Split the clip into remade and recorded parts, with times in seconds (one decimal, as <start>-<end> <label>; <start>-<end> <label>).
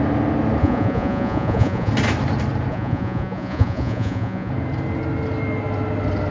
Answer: 0.0-0.6 recorded; 0.6-1.9 remade; 1.9-2.7 recorded; 2.7-4.5 remade; 4.5-6.3 recorded